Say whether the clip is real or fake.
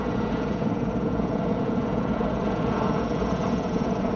fake